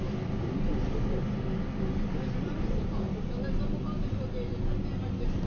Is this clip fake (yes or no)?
no